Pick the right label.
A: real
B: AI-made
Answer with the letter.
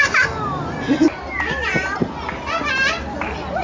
A